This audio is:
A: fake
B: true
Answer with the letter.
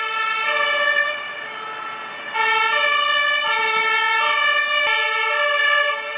B